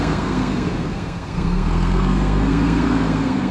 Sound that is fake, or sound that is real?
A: fake